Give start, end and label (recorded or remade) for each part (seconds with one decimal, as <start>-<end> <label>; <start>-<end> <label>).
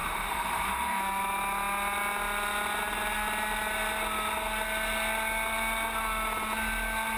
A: 0.0-1.0 remade; 1.0-7.2 recorded